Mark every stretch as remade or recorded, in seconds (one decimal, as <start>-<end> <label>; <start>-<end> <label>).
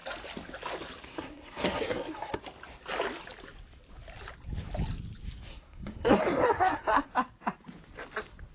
0.0-1.1 recorded; 1.1-2.4 remade; 2.4-5.5 recorded; 5.5-7.1 remade; 7.1-8.5 recorded